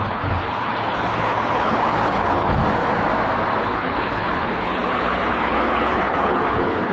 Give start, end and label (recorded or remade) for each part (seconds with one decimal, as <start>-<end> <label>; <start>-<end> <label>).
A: 0.0-2.6 remade; 2.6-3.6 recorded; 3.6-6.9 remade